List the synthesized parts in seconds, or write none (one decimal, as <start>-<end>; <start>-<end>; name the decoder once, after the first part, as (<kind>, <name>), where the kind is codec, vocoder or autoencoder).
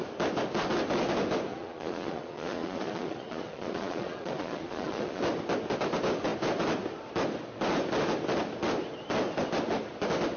1.5-5.2 (vocoder, Vocos)